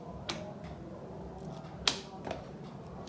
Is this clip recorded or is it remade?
recorded